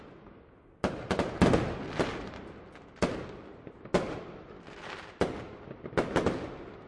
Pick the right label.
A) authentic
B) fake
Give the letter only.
A